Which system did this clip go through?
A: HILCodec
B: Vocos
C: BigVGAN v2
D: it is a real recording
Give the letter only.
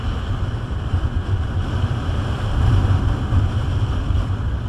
C